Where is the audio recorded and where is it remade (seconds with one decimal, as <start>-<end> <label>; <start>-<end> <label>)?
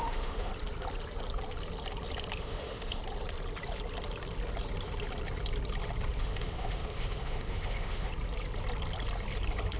0.0-0.5 remade; 0.5-2.4 recorded; 2.4-3.0 remade; 3.0-6.2 recorded; 6.2-8.1 remade; 8.1-9.8 recorded